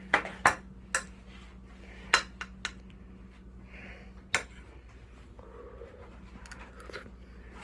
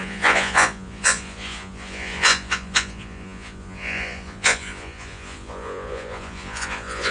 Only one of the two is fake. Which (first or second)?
second